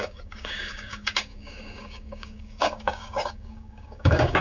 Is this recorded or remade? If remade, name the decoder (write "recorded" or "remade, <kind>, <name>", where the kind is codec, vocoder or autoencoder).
remade, codec, DAC